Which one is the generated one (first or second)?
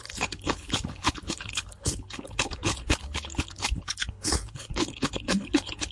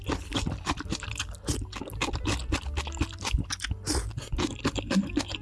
first